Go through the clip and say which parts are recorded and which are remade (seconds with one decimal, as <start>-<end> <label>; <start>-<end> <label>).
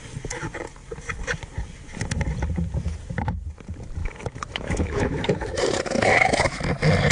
0.0-4.0 recorded; 4.0-6.6 remade; 6.6-7.1 recorded